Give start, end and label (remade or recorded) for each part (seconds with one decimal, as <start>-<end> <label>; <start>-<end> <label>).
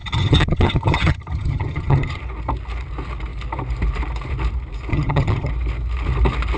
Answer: 0.0-2.2 remade; 2.2-4.9 recorded; 4.9-5.5 remade; 5.5-6.6 recorded